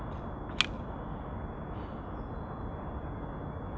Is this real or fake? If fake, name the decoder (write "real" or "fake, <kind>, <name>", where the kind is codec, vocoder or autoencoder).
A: real